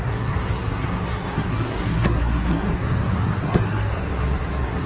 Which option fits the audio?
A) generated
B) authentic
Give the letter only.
A